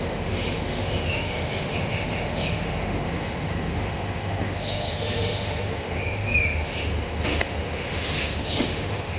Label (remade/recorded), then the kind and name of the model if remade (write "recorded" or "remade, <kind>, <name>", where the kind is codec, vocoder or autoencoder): remade, autoencoder, DAC-VAE